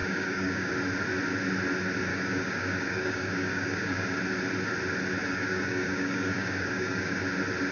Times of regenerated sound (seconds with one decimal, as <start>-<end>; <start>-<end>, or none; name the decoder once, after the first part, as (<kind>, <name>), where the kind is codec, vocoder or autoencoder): 0.0-0.7 (codec, DAC); 2.1-4.2; 5.2-7.2